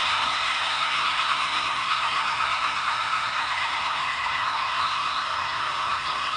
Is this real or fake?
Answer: fake